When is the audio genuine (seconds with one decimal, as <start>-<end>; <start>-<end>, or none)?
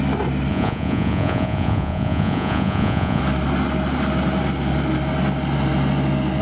0.0-0.5; 3.2-6.4